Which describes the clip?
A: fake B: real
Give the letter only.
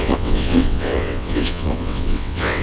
A